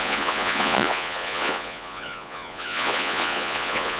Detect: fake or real fake